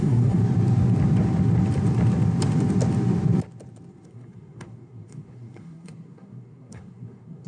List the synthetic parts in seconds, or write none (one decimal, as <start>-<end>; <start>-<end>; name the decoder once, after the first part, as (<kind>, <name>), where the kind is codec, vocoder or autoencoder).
0.0-0.4 (codec, SNAC); 3.9-7.5